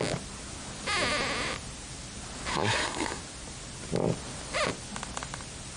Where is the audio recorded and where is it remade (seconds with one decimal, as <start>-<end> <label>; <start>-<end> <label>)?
0.0-2.5 recorded; 2.5-3.2 remade; 3.2-5.8 recorded